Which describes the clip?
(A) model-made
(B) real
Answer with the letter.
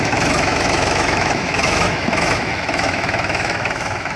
A